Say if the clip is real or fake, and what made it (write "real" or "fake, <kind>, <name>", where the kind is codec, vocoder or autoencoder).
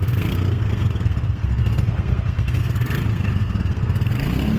fake, codec, SNAC